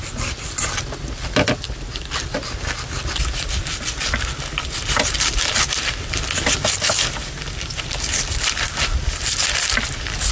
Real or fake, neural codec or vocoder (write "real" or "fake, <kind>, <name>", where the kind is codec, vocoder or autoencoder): real